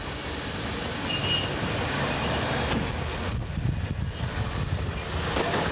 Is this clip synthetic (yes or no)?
no